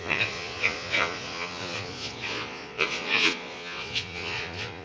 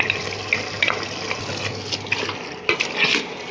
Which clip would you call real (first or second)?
second